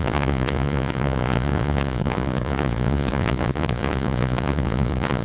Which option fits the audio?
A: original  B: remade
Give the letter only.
B